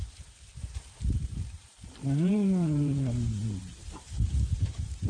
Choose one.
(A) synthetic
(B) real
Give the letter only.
A